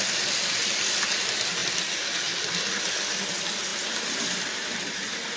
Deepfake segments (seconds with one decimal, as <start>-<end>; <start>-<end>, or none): none